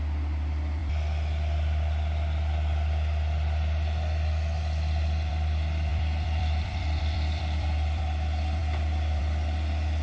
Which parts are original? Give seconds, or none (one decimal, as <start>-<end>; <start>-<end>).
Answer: 0.0-5.9; 8.0-10.0